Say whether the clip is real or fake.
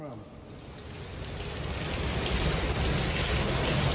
real